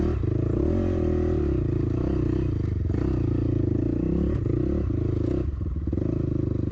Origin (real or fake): real